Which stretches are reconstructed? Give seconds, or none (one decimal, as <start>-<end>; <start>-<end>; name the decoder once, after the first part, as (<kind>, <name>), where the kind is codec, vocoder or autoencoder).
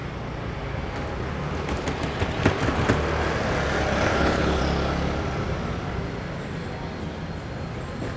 4.1-4.6 (codec, HILCodec)